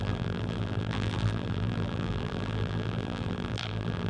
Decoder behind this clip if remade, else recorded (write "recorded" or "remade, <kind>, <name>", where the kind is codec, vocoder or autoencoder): remade, vocoder, BigVGAN v2